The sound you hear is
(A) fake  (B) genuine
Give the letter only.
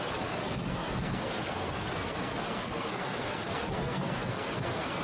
A